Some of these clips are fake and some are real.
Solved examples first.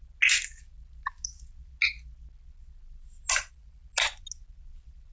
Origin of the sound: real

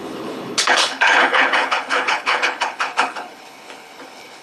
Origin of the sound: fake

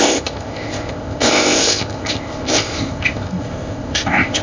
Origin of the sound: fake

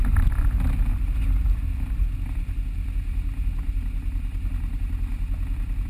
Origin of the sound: real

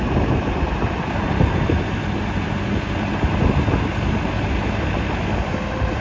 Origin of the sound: real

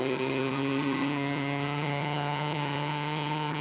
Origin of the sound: fake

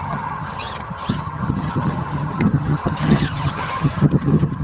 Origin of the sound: fake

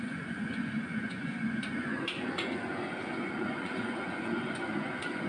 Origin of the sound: fake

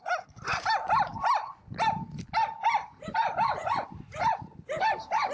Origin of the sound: real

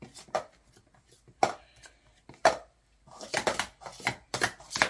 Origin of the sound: real